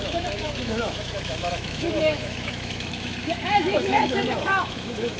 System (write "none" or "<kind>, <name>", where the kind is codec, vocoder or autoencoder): autoencoder, DAC-VAE